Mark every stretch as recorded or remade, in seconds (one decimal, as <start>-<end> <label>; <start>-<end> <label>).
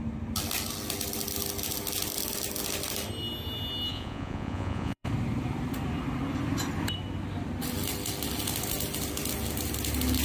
0.0-3.9 recorded; 3.9-5.1 remade; 5.1-10.2 recorded